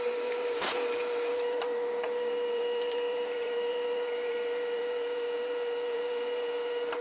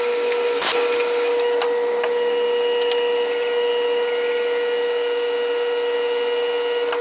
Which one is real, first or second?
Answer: second